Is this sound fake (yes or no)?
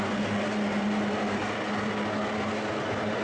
no